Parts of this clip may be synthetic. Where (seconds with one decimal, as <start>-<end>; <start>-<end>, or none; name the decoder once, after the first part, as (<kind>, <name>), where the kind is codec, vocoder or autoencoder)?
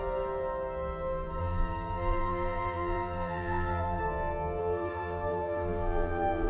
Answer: 1.4-4.0 (vocoder, BigVGAN v2); 4.6-6.5